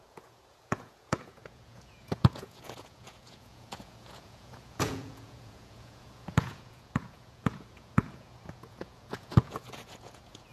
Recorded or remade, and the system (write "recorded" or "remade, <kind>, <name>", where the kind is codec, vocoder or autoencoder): remade, vocoder, Vocos